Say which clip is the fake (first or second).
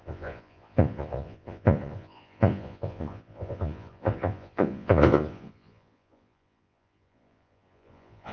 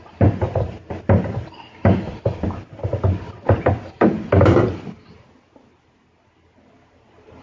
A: first